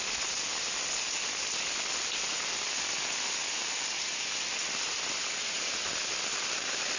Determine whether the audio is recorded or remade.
recorded